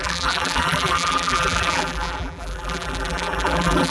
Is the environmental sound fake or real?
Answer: fake